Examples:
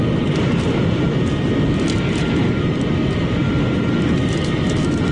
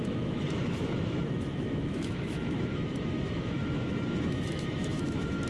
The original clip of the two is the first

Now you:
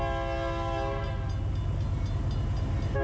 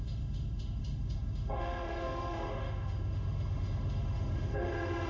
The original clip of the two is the first